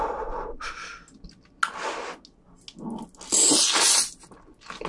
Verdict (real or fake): real